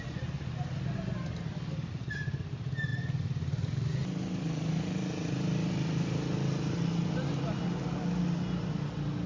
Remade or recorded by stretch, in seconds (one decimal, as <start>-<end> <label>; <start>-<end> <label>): 0.0-9.3 recorded